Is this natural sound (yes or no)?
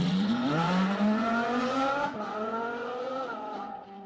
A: no